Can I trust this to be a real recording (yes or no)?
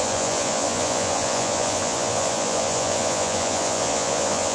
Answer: no